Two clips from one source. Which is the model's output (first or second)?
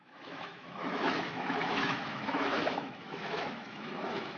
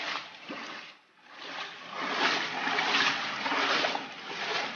first